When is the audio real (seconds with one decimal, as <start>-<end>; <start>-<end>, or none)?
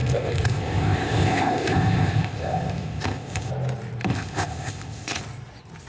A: 3.5-4.1; 5.2-5.9